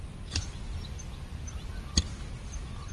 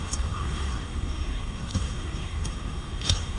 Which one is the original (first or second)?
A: first